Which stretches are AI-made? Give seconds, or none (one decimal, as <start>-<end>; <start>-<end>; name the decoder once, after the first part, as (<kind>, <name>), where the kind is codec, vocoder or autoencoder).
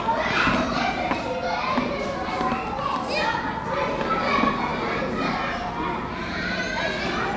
none